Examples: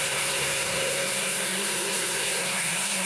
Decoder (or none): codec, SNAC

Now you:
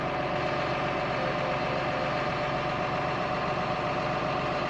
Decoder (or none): none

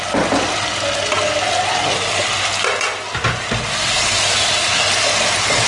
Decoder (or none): none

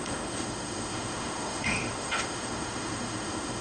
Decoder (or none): autoencoder, DAC-VAE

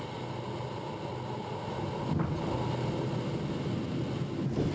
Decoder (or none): none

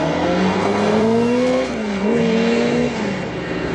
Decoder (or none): codec, SNAC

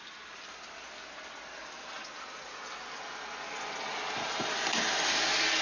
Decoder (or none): none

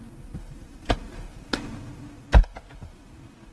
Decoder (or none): none